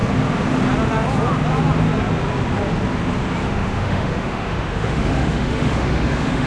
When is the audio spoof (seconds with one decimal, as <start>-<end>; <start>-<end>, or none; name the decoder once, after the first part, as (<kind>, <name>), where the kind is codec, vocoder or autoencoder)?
3.4-6.5 (autoencoder, DAC-VAE)

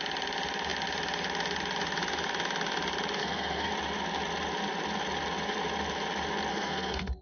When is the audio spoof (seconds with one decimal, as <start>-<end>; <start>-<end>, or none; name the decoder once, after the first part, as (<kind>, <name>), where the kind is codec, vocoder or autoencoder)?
3.2-3.7 (codec, SNAC); 6.5-7.2

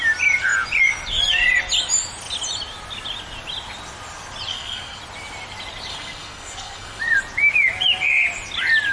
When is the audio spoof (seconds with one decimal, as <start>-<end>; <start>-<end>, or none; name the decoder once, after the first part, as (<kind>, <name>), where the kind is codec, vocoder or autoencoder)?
4.5-5.0 (codec, SNAC); 5.9-7.0

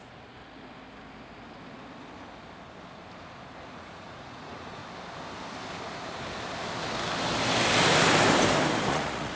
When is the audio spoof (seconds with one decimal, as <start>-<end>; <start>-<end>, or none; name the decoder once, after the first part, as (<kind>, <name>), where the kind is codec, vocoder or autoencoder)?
0.0-0.4 (vocoder, Vocos); 3.8-4.8; 8.9-9.4

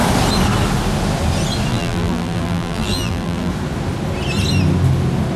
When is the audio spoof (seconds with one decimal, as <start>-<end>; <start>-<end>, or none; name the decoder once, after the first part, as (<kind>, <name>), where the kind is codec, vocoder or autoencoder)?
1.7-3.5 (vocoder, BigVGAN v2)